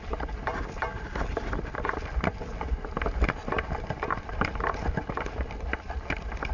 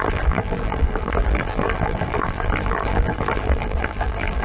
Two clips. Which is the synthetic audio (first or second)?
second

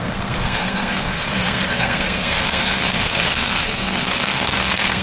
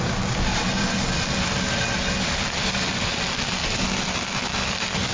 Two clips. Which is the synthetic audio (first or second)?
first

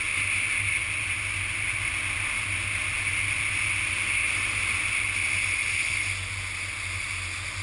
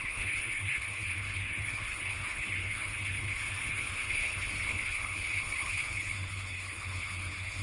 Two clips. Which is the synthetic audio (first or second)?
second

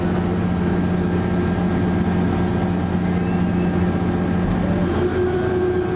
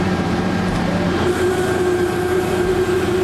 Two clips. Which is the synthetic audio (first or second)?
second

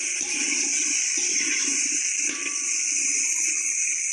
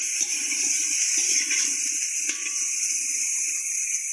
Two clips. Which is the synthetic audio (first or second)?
second